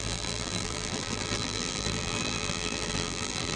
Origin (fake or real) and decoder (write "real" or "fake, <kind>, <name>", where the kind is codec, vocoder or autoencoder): fake, vocoder, BigVGAN v2